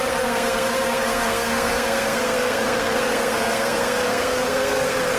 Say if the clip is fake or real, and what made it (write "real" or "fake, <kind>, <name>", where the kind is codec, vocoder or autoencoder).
fake, codec, SNAC